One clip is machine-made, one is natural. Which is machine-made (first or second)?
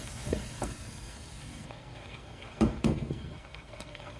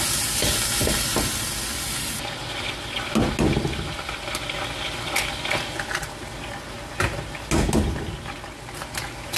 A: first